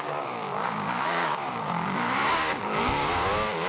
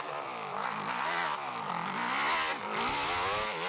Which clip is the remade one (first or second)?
first